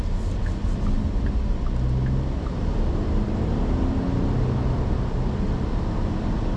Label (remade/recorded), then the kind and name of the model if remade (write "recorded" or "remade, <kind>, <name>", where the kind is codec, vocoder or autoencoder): recorded